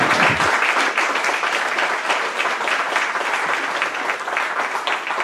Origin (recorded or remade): recorded